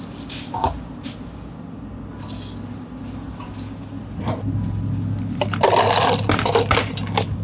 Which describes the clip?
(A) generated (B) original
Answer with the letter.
B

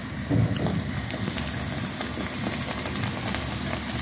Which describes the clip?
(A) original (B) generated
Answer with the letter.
A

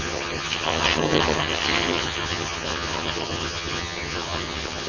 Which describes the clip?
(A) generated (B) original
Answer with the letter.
A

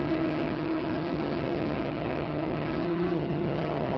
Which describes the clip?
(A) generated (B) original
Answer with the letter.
A